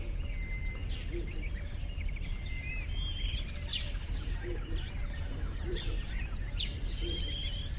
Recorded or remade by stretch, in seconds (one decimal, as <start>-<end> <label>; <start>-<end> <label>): 0.0-0.8 recorded; 0.8-2.7 remade; 2.7-3.7 recorded; 3.7-7.2 remade; 7.2-7.8 recorded